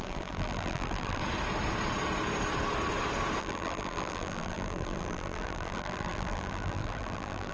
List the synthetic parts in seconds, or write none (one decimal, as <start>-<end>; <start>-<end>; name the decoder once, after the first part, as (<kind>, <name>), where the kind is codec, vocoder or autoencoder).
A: 0.0-1.2 (vocoder, BigVGAN v2); 3.4-7.5